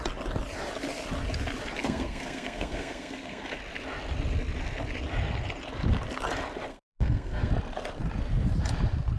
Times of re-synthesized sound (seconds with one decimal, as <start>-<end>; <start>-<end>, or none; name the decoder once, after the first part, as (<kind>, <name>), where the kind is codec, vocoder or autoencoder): 1.8-3.6 (codec, SNAC); 6.7-7.5